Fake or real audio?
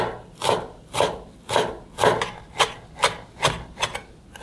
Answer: real